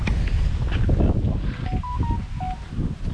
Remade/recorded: recorded